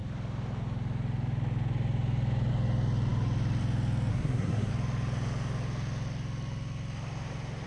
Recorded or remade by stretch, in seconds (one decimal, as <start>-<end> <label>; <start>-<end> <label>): 0.0-4.1 recorded; 4.1-4.7 remade; 4.7-7.7 recorded